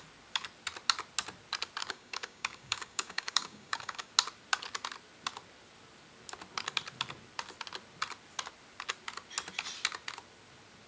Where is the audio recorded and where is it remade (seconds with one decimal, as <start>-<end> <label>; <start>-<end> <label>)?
0.0-1.8 recorded; 1.8-4.1 remade; 4.1-10.9 recorded